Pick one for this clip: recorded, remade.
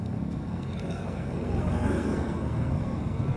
remade